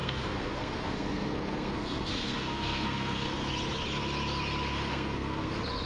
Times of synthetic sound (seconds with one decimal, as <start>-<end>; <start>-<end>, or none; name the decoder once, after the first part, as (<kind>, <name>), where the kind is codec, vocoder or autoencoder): 0.0-3.5 (codec, SNAC); 4.9-5.5